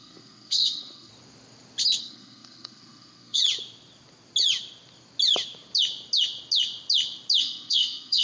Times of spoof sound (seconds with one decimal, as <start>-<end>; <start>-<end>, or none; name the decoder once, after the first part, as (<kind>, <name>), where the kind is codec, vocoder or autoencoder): 0.0-1.1 (codec, SNAC); 2.0-3.4; 7.4-8.2